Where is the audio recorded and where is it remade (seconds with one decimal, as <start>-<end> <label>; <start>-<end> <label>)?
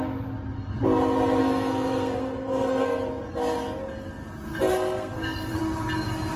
0.0-1.4 recorded; 1.4-3.0 remade; 3.0-4.7 recorded; 4.7-5.6 remade; 5.6-6.4 recorded